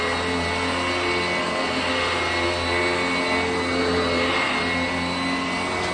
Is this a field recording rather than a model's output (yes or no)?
yes